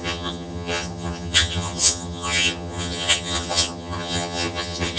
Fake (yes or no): yes